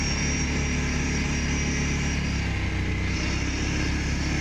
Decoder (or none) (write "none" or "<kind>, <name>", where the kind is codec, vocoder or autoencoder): none